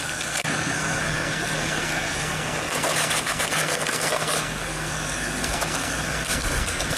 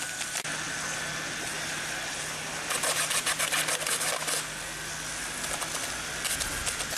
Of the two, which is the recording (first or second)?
second